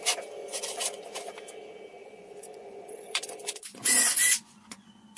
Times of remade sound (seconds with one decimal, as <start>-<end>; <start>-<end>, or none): 0.4-1.3; 2.0-5.2